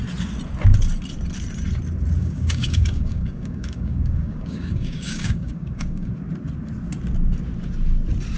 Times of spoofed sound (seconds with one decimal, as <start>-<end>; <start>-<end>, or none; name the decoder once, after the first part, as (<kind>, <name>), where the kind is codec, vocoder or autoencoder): 2.2-6.1 (codec, DAC)